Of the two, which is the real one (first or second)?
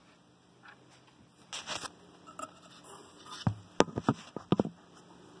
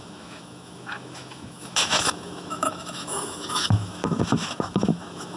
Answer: first